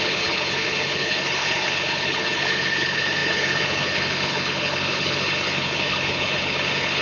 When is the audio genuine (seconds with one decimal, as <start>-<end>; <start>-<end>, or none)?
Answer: none